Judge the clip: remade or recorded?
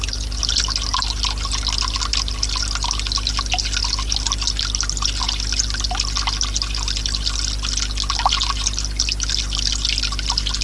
recorded